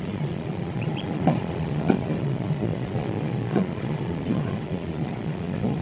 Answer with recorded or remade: remade